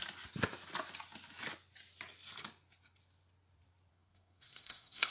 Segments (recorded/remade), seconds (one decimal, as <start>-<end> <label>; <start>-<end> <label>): 0.0-3.9 recorded; 3.9-5.1 remade